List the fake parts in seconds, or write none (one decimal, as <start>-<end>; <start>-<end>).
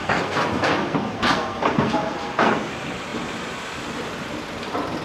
0.0-2.7